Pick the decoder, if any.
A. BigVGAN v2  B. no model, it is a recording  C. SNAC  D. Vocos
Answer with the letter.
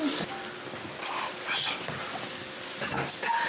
B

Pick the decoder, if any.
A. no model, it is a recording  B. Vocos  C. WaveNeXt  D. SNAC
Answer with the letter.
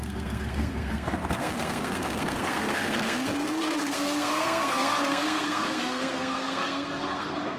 D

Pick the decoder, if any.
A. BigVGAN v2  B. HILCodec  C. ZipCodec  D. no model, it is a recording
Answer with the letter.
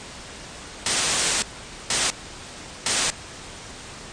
D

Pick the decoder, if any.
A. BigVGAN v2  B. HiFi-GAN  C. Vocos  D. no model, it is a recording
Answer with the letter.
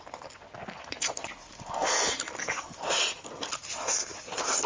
D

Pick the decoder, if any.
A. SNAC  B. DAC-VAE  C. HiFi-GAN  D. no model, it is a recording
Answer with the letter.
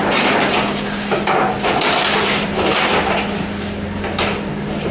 D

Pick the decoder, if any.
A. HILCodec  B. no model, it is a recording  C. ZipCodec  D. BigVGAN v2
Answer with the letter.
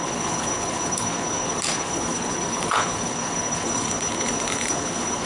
A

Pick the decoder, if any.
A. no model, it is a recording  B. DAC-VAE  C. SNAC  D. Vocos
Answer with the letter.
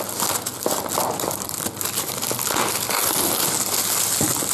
A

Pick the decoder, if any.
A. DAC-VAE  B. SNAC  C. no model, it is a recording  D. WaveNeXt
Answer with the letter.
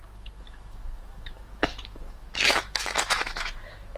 A